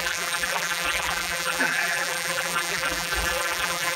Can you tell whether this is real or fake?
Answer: fake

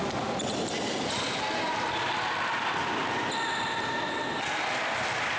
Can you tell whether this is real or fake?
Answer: real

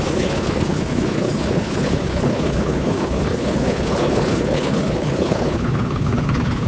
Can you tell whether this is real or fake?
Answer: fake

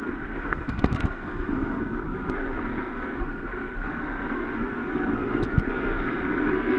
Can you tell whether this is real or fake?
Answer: fake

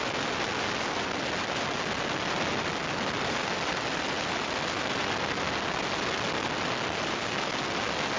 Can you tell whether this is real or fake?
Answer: real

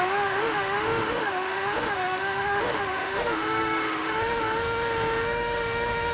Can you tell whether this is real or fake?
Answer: fake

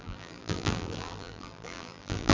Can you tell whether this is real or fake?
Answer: fake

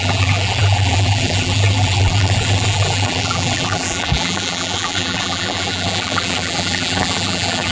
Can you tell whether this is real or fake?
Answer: fake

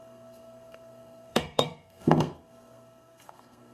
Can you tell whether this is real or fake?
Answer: fake